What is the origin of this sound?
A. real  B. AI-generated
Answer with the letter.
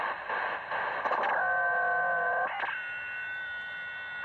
A